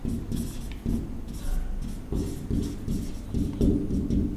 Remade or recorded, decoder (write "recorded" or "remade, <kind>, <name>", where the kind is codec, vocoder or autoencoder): recorded